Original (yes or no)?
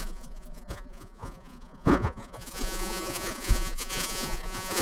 no